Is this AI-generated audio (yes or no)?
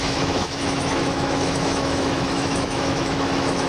yes